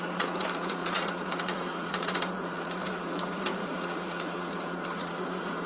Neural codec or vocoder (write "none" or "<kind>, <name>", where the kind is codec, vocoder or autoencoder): vocoder, Vocos